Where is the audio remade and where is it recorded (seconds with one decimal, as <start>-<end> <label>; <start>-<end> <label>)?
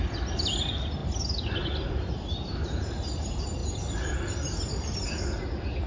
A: 0.0-5.9 recorded